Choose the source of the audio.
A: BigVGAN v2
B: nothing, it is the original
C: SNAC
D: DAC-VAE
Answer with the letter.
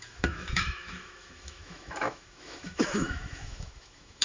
D